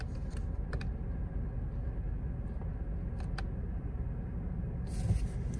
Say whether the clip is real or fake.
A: real